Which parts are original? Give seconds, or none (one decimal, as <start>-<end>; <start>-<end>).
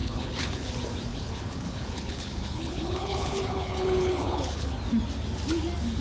0.7-1.1; 4.7-6.0